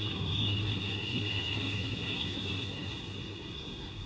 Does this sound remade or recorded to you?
remade